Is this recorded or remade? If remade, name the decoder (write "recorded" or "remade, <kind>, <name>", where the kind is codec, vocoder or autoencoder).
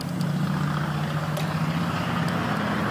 recorded